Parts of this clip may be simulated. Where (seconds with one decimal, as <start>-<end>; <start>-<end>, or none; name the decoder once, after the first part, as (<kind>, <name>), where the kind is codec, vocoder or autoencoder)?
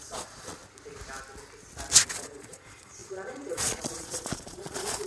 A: 0.0-0.6 (vocoder, Vocos); 2.1-5.1